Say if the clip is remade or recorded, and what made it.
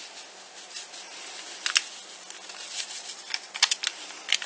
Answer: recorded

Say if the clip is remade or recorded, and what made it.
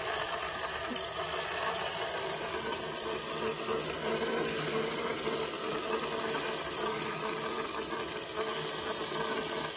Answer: recorded